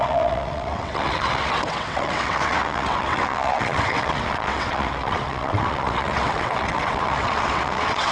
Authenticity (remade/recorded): remade